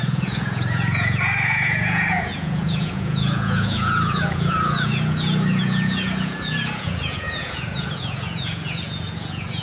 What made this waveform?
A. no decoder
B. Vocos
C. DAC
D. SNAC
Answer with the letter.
B